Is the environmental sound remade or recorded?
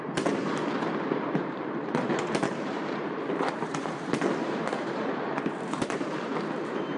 remade